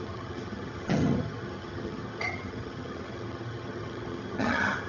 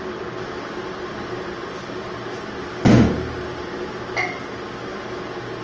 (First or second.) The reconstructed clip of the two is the first